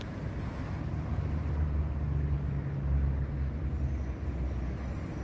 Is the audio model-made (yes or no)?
no